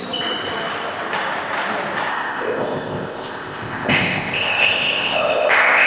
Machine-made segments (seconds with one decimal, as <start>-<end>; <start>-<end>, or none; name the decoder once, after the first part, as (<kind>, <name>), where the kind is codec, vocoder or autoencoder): 2.1-5.9 (codec, ZipCodec)